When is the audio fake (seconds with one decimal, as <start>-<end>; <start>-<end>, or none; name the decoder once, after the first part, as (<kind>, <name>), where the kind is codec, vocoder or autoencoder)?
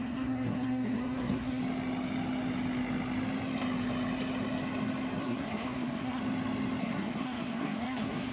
0.0-1.6 (codec, SNAC); 5.2-6.2; 6.8-8.3